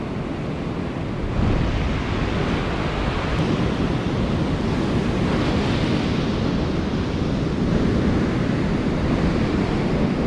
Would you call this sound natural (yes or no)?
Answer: yes